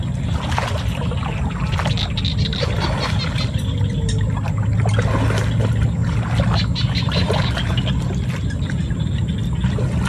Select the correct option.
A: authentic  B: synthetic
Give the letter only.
A